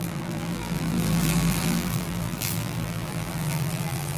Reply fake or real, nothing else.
fake